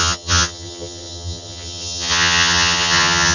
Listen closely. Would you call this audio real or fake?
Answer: fake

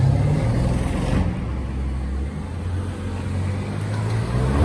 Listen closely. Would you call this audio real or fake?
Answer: real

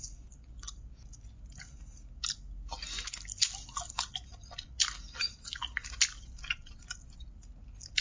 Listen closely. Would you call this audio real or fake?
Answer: real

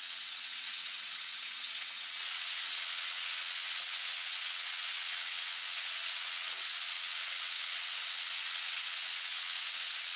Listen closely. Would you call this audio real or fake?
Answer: fake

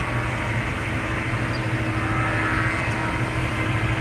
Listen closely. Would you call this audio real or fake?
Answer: real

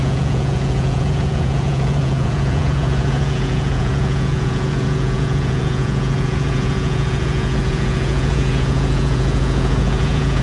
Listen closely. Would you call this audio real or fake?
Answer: fake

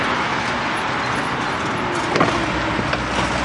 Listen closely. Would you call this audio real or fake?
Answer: real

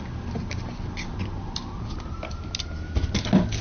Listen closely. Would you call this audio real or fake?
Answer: real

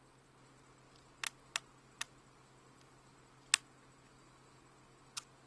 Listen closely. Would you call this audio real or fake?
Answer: real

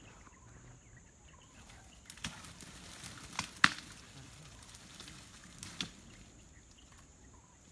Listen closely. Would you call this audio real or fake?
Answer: real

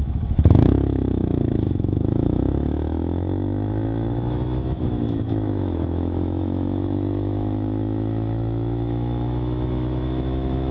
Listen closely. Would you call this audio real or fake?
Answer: fake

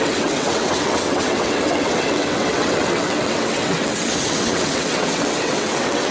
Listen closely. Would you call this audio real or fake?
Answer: fake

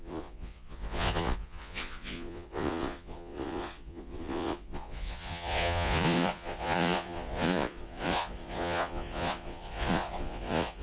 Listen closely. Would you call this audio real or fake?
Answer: fake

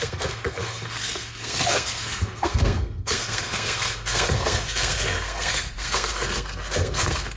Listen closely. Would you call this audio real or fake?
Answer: fake